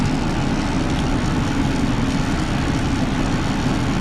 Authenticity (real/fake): real